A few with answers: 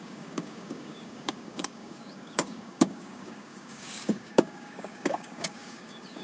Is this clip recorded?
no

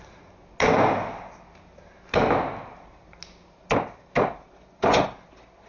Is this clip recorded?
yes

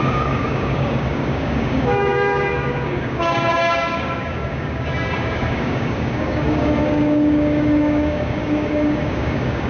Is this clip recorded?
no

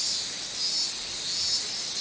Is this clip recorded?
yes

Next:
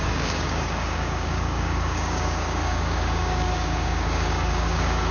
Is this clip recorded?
no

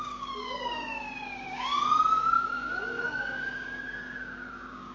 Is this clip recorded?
no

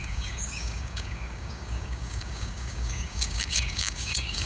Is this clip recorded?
no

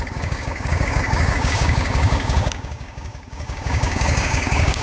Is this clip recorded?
no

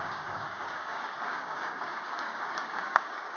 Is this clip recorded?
no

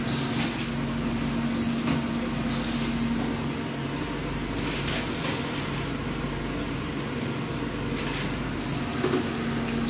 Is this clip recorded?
yes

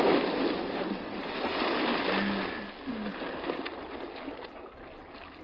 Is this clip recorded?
yes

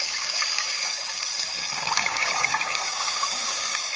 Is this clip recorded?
no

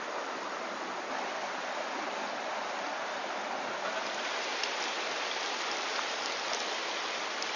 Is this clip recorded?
yes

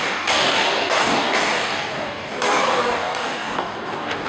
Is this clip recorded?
no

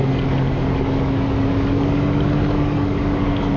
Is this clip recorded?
no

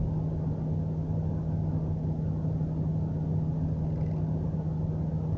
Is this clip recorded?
yes